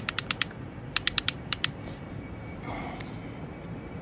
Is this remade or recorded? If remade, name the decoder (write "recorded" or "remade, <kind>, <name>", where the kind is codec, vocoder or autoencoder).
remade, vocoder, BigVGAN v2